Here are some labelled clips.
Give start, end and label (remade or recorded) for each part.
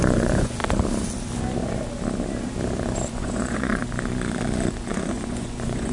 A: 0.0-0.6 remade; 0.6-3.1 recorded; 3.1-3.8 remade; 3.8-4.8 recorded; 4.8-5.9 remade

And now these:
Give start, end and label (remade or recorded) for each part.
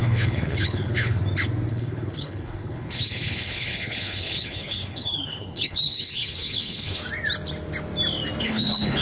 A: 0.0-1.2 remade; 1.2-1.7 recorded; 1.7-7.0 remade; 7.0-8.4 recorded; 8.4-9.0 remade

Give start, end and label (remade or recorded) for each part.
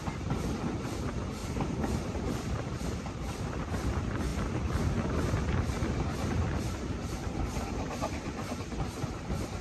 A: 0.0-1.4 remade; 1.4-2.2 recorded; 2.2-4.3 remade; 4.3-7.4 recorded; 7.4-9.6 remade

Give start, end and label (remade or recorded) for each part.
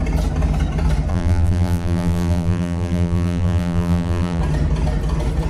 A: 0.0-1.1 recorded; 1.1-4.4 remade; 4.4-5.5 recorded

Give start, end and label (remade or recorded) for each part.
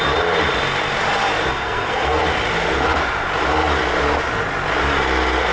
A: 0.0-1.5 recorded; 1.5-2.2 remade; 2.2-5.5 recorded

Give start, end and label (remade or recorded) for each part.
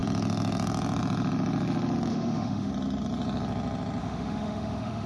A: 0.0-2.1 recorded; 2.1-2.7 remade; 2.7-4.0 recorded; 4.0-5.1 remade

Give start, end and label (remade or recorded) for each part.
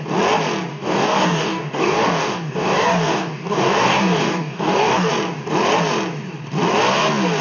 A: 0.0-0.7 recorded; 0.7-5.1 remade; 5.1-7.4 recorded